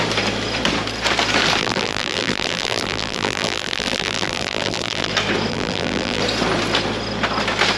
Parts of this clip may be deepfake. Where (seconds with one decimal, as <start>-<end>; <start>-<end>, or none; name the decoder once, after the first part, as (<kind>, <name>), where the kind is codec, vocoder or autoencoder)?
1.6-5.1 (vocoder, BigVGAN v2); 5.5-6.2